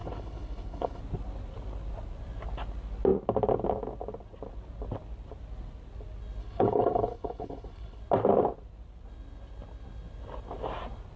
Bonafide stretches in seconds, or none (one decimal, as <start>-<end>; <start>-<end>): 1.0-6.4; 8.0-11.2